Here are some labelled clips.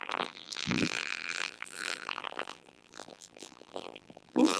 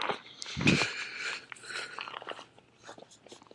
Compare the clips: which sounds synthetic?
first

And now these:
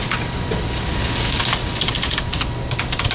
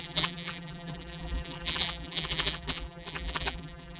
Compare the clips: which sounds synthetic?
second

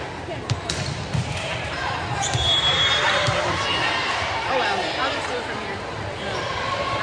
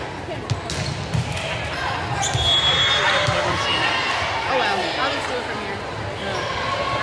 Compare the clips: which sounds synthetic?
first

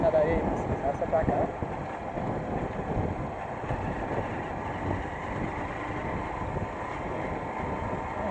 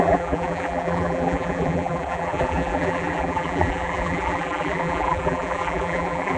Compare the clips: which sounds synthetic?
second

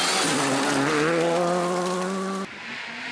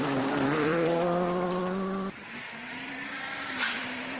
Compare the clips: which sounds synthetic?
second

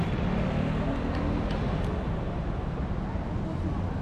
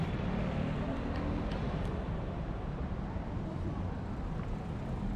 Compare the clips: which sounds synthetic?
second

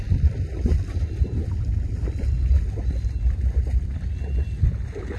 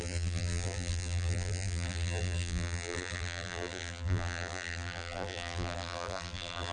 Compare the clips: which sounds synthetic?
second